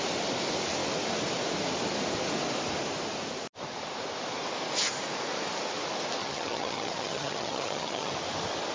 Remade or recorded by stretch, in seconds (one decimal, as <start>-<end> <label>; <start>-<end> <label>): 0.0-6.2 recorded; 6.2-8.1 remade; 8.1-8.7 recorded